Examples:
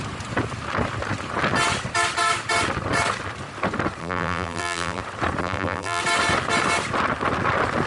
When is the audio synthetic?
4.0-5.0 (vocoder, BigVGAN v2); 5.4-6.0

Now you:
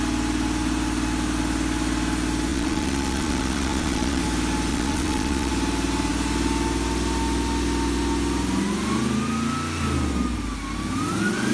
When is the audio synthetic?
2.5-4.2 (vocoder, Vocos); 4.7-5.5

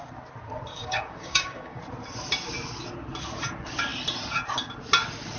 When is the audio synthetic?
0.7-1.8 (codec, DAC)